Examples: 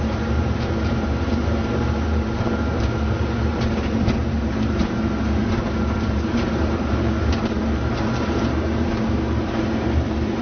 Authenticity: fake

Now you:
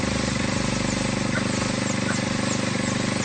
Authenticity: real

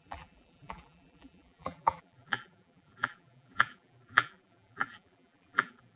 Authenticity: fake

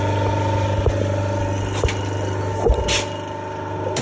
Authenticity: real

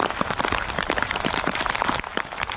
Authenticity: fake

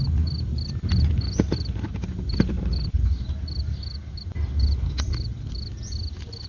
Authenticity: real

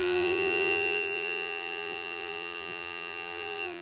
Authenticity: fake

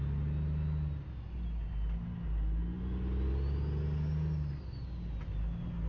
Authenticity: real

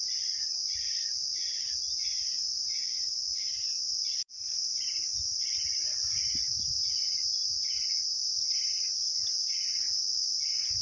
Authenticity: fake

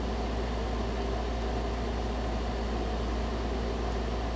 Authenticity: real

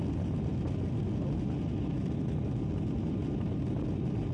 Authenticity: real